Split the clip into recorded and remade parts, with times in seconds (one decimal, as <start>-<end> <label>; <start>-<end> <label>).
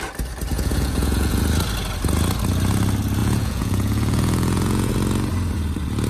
0.0-0.5 recorded; 0.5-1.4 remade; 1.4-3.2 recorded; 3.2-4.9 remade; 4.9-6.1 recorded